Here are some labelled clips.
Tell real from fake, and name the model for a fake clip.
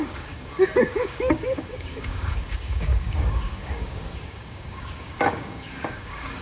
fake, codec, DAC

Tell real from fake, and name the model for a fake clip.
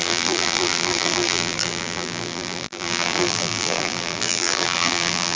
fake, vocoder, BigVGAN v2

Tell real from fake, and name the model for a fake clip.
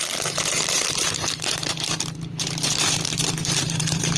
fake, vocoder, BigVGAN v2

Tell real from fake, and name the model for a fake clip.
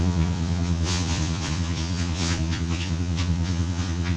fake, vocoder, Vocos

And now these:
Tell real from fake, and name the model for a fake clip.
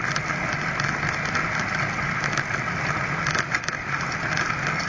real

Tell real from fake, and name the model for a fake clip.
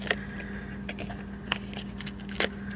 real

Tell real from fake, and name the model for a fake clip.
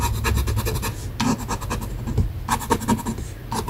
real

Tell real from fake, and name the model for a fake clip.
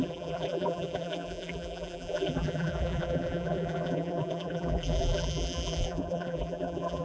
fake, vocoder, BigVGAN v2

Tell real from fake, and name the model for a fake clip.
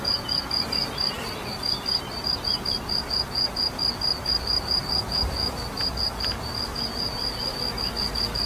real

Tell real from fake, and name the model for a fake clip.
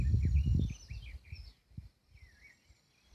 real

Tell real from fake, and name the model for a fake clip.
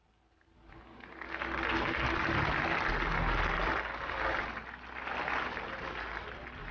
real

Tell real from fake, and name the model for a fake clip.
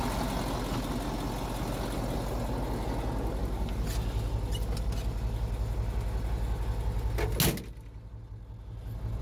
real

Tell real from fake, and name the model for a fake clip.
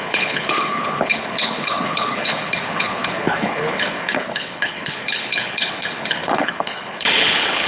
fake, codec, HILCodec